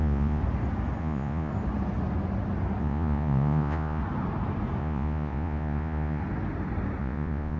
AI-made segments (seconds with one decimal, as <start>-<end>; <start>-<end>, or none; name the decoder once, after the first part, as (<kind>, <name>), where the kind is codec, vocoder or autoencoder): 0.0-0.4 (vocoder, Vocos); 1.0-1.5; 2.8-4.0; 4.8-6.2; 7.0-7.6